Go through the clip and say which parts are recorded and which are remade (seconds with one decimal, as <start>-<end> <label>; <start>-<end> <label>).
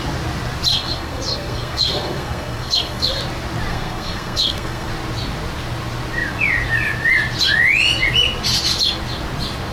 0.0-0.7 recorded; 0.7-3.2 remade; 3.2-3.7 recorded; 3.7-4.9 remade; 4.9-9.7 recorded